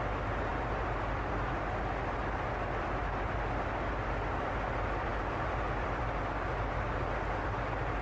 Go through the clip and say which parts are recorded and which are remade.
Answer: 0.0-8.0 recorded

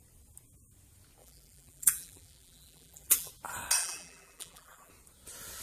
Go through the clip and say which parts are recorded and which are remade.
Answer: 0.0-1.2 recorded; 1.2-3.3 remade; 3.3-3.8 recorded; 3.8-4.9 remade; 4.9-5.6 recorded

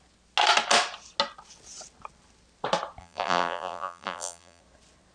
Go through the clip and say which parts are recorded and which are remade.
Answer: 0.0-3.0 recorded; 3.0-4.6 remade; 4.6-5.1 recorded

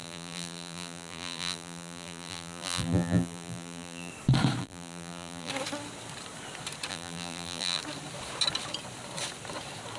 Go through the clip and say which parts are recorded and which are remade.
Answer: 0.0-4.1 remade; 4.1-4.6 recorded; 4.6-5.5 remade; 5.5-6.9 recorded; 6.9-7.8 remade; 7.8-10.0 recorded

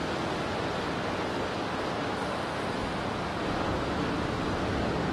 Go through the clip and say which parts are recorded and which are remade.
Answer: 0.0-5.1 recorded

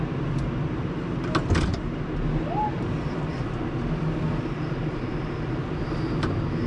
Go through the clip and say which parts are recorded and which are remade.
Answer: 0.0-6.7 recorded

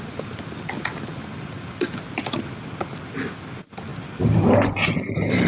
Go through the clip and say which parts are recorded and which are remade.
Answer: 0.0-3.9 recorded; 3.9-4.7 remade; 4.7-5.5 recorded

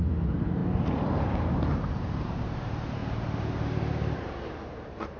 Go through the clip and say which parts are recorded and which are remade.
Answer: 0.0-3.0 remade; 3.0-3.9 recorded; 3.9-5.2 remade